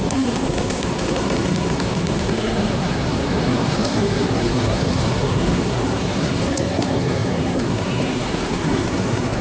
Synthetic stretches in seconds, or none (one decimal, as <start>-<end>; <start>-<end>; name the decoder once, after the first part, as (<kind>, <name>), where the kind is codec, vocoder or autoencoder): 0.0-9.4 (codec, SNAC)